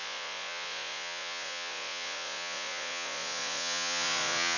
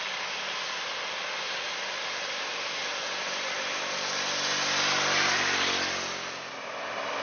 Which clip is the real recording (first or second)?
second